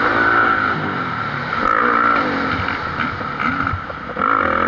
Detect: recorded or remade recorded